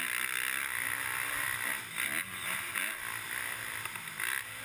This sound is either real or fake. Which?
real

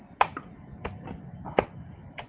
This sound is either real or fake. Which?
real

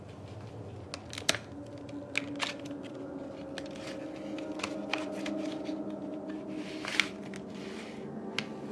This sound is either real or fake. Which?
real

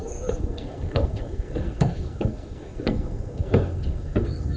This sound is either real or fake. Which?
fake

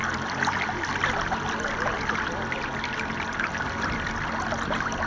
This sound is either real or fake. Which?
real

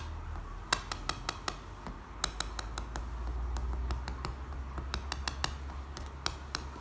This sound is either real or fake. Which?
real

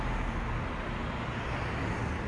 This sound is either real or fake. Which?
real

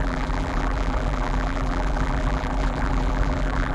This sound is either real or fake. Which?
fake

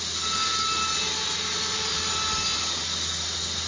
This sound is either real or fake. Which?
real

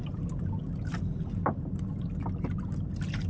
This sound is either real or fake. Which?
real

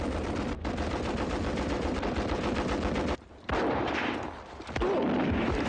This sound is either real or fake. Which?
real